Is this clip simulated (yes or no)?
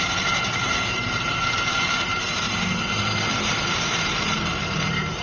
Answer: yes